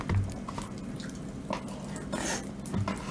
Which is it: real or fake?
real